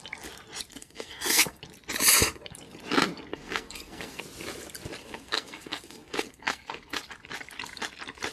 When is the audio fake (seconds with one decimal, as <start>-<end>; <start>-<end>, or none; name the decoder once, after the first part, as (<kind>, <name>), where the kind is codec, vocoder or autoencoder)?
0.7-1.6 (codec, SNAC); 3.3-4.2; 5.0-7.0